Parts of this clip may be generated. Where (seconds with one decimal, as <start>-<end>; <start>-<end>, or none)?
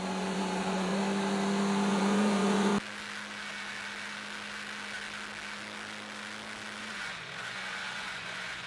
0.0-0.9; 1.9-2.7; 6.8-8.7